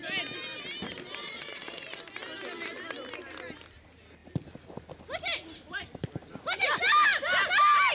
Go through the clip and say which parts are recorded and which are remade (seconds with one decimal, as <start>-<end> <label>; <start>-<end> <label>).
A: 0.0-1.2 recorded; 1.2-2.0 remade; 2.0-7.9 recorded

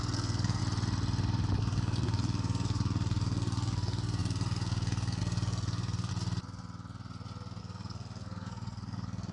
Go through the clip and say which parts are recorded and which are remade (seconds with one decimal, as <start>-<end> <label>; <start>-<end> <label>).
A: 0.0-0.6 remade; 0.6-1.6 recorded; 1.6-6.1 remade; 6.1-7.6 recorded; 7.6-9.3 remade